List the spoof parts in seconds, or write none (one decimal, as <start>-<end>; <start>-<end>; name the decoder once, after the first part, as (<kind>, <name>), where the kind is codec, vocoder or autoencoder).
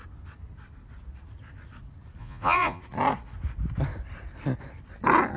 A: 2.2-2.8 (vocoder, Vocos)